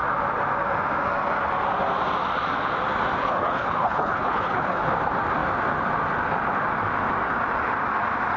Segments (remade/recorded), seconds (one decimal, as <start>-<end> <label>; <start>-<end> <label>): 0.0-3.2 recorded; 3.2-4.8 remade; 4.8-8.4 recorded